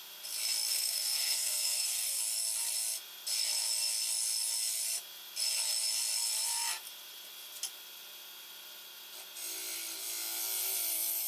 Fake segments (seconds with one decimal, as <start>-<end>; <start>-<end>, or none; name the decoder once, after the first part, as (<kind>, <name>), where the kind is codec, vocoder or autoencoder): 0.7-2.2 (codec, SNAC)